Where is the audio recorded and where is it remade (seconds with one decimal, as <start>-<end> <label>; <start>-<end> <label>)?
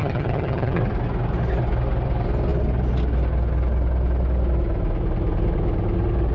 0.0-0.8 remade; 0.8-6.3 recorded